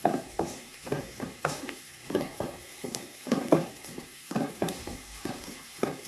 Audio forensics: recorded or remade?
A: remade